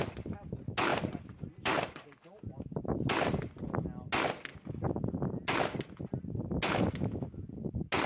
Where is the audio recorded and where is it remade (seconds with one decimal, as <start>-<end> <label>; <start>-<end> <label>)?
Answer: 0.0-0.9 recorded; 0.9-1.9 remade; 1.9-8.1 recorded